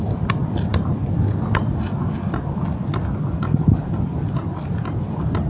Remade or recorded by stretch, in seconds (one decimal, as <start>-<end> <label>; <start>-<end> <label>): 0.0-5.5 recorded